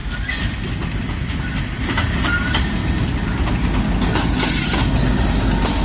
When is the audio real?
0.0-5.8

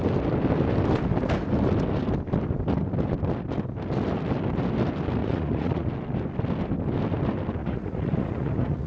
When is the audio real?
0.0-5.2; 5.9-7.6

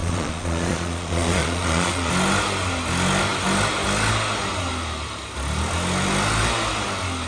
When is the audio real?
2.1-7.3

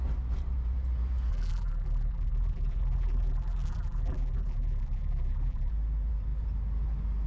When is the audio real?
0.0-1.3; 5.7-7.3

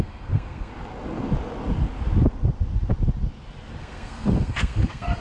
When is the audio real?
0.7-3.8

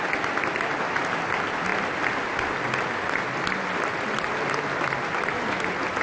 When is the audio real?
0.0-6.0

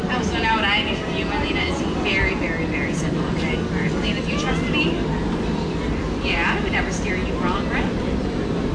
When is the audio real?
0.0-8.7